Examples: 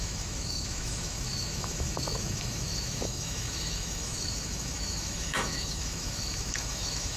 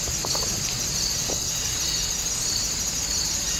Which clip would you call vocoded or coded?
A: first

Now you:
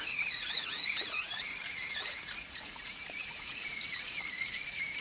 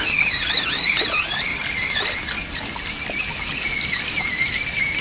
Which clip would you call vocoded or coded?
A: first